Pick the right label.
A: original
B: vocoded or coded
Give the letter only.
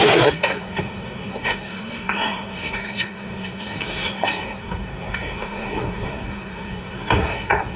B